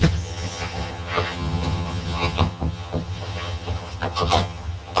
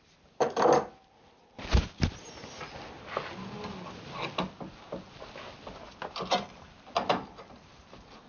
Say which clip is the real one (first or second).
second